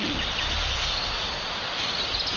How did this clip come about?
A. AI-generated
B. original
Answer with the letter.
B